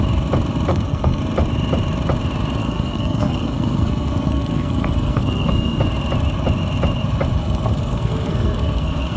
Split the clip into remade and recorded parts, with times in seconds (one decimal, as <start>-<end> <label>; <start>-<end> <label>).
0.0-0.7 recorded; 0.7-1.2 remade; 1.2-2.6 recorded; 2.6-5.8 remade; 5.8-7.4 recorded; 7.4-9.2 remade